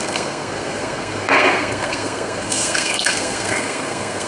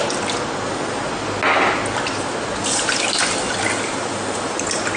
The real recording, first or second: second